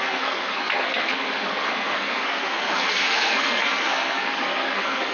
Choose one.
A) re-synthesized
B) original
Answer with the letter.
A